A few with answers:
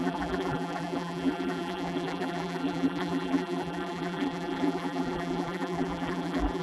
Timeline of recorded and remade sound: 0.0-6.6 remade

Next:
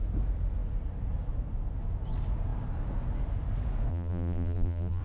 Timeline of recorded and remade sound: 0.0-3.9 recorded; 3.9-5.0 remade

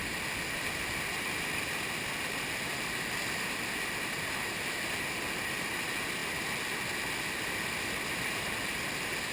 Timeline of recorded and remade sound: 0.0-9.3 recorded